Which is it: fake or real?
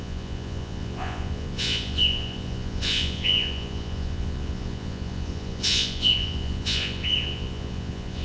fake